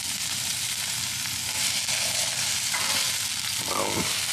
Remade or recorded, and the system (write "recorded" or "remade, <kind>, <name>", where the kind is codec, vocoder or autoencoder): recorded